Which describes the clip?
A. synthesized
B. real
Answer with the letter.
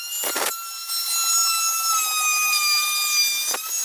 B